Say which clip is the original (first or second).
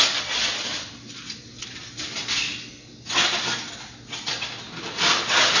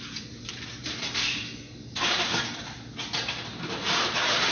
first